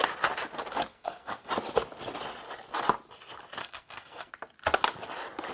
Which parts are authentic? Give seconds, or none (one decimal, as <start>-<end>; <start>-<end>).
0.0-0.9; 1.5-3.6; 4.3-5.5